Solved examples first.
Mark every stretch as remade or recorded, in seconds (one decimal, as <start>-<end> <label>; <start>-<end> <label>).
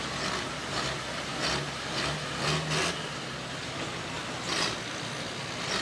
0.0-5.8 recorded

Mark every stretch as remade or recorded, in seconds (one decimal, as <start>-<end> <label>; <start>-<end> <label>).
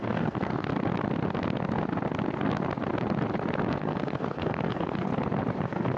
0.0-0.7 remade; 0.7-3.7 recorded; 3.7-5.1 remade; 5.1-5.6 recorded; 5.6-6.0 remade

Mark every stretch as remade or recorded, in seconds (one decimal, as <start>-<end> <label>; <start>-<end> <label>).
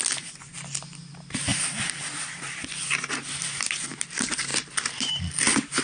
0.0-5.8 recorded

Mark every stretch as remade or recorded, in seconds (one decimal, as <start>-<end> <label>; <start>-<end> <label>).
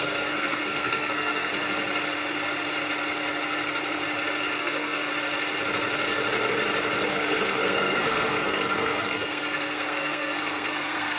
0.0-1.5 remade; 1.5-4.6 recorded; 4.6-5.1 remade; 5.1-7.1 recorded; 7.1-11.2 remade